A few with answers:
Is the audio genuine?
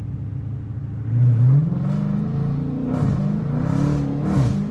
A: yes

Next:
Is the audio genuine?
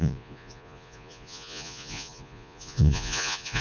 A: no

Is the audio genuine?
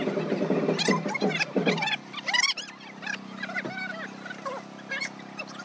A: yes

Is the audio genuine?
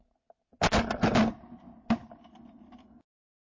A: yes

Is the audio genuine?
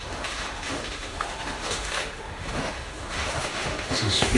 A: no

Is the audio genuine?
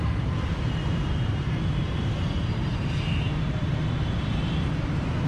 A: no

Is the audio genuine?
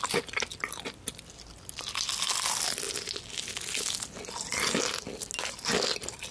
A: yes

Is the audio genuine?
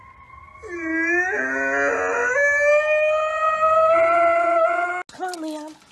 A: yes